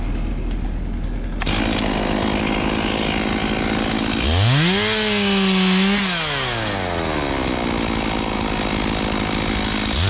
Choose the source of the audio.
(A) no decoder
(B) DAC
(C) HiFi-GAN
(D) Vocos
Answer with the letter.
A